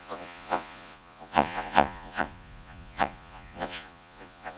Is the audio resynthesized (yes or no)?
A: yes